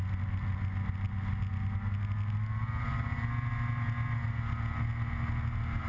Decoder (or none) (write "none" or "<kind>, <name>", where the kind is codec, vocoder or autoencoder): none